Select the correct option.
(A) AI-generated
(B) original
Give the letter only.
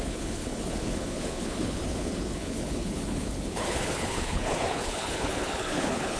A